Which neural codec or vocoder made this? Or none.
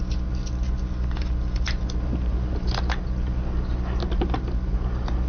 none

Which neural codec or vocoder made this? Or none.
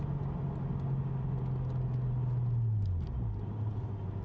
none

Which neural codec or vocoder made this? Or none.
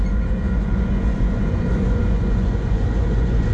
vocoder, Vocos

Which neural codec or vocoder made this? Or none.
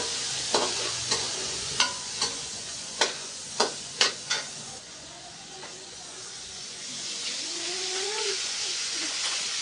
vocoder, Vocos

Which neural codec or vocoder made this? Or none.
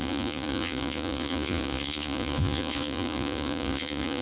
vocoder, Vocos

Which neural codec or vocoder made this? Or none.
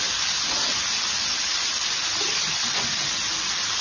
none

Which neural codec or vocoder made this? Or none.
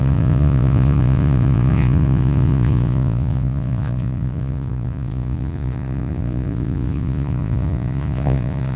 vocoder, Vocos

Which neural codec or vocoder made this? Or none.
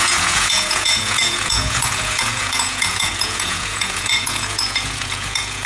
vocoder, Vocos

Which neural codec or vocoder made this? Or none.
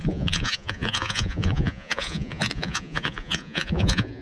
vocoder, Vocos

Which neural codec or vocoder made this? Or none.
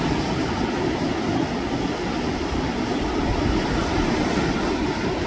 none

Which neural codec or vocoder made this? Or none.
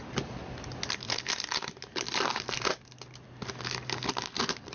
none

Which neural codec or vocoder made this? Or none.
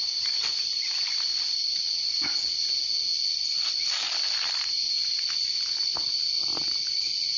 none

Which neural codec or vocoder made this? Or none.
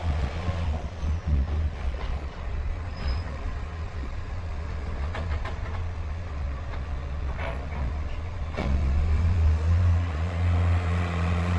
vocoder, Vocos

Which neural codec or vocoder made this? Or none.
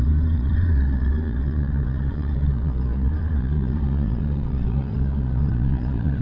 vocoder, Vocos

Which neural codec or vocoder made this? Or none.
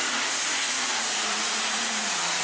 vocoder, Vocos